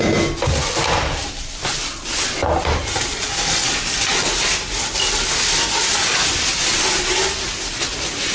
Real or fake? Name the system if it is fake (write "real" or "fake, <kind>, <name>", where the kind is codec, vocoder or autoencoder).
real